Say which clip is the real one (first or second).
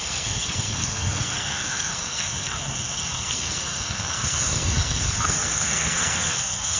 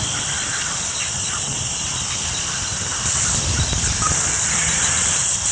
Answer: second